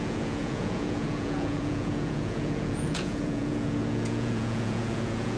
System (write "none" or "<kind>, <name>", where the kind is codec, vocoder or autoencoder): vocoder, Vocos